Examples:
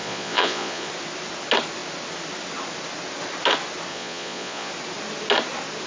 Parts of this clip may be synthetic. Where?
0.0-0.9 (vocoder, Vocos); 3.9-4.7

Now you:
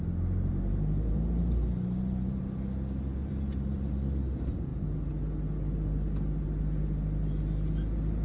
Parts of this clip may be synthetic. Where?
0.5-2.4 (vocoder, BigVGAN v2); 3.2-3.9

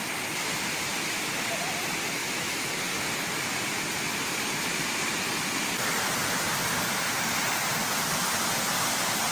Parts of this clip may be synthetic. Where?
2.2-2.8 (autoencoder, DAC-VAE)

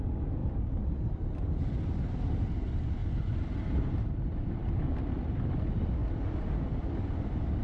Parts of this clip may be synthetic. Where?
none